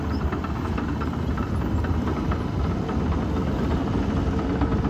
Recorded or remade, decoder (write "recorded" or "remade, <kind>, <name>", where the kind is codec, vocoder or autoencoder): recorded